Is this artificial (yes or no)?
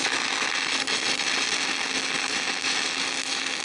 no